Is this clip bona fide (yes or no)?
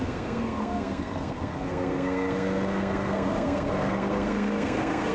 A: no